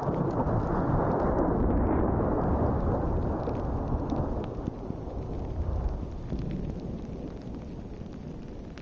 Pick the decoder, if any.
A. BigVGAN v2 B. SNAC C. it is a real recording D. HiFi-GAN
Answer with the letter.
C